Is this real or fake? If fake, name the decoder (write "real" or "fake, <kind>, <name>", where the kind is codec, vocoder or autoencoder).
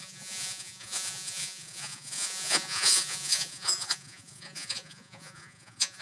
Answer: fake, vocoder, Vocos